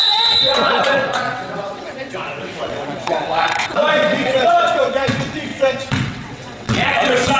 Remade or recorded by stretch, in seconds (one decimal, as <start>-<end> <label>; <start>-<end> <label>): 0.0-7.4 remade